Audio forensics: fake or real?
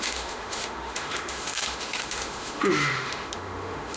fake